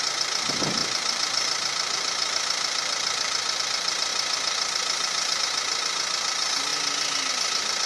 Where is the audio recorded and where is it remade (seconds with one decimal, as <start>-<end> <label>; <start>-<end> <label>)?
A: 0.0-0.8 recorded; 0.8-3.6 remade; 3.6-4.1 recorded; 4.1-5.4 remade; 5.4-7.9 recorded